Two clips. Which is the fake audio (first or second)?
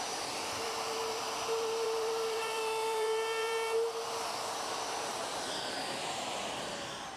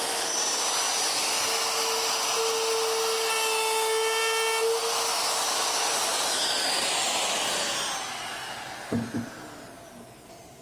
first